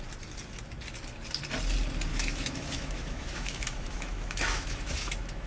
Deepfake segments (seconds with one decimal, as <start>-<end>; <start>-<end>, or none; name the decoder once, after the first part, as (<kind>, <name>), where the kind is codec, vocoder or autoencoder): 2.1-5.5 (autoencoder, DAC-VAE)